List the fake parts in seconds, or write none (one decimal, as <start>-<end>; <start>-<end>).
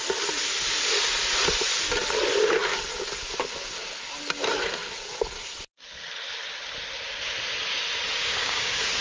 8.2-9.0